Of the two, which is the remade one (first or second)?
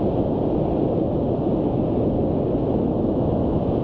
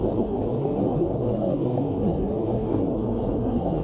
second